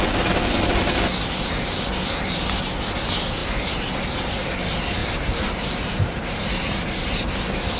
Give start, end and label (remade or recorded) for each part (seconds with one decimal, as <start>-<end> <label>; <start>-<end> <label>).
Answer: 0.0-3.4 recorded; 3.4-3.9 remade; 3.9-5.0 recorded; 5.0-7.3 remade; 7.3-7.8 recorded